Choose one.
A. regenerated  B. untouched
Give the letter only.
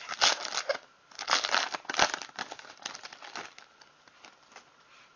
B